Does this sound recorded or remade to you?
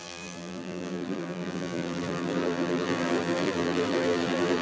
remade